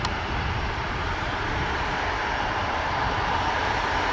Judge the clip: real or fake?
real